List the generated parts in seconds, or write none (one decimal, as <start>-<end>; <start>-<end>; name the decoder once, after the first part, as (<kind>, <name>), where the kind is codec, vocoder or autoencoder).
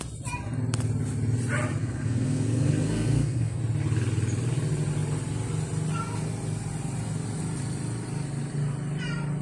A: 1.8-3.6 (codec, SNAC)